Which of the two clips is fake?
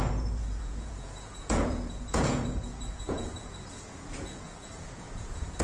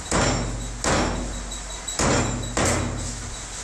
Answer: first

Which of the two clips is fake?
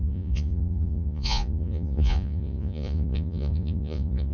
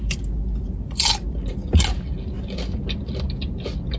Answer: first